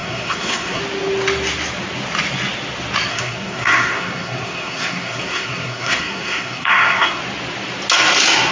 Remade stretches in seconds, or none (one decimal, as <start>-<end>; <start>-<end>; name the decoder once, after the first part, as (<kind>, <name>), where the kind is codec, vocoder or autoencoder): 0.0-0.8 (codec, SNAC); 3.1-7.2